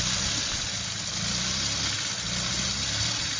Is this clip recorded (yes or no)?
yes